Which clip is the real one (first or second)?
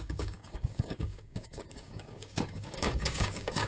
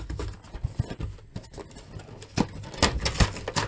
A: second